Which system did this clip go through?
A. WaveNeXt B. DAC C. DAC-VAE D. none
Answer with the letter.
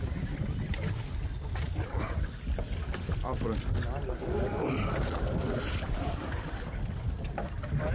D